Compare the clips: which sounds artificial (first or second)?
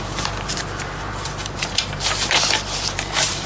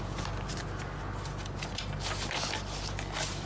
first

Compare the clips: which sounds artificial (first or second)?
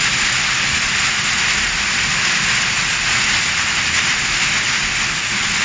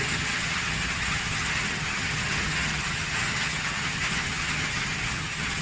second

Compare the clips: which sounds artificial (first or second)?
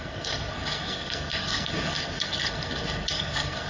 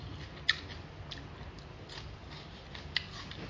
first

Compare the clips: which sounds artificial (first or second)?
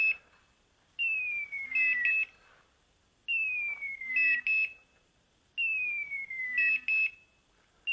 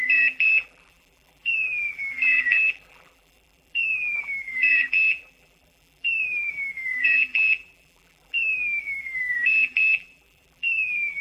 second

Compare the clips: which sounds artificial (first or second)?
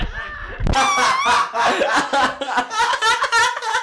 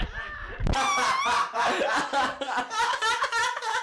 second